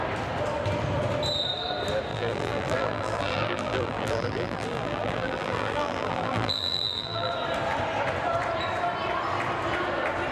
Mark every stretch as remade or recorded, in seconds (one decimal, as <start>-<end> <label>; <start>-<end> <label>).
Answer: 0.0-2.1 recorded; 2.1-7.3 remade; 7.3-10.3 recorded